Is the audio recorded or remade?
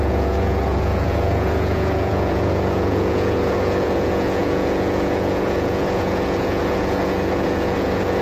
remade